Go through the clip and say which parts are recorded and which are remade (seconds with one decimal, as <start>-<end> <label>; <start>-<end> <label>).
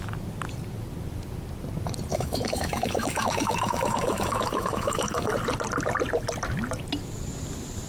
0.0-2.1 recorded; 2.1-5.3 remade; 5.3-7.9 recorded